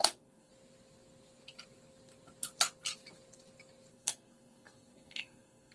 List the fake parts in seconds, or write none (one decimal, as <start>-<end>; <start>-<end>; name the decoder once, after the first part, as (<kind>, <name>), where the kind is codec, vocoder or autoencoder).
0.0-0.5 (codec, SNAC); 3.9-5.7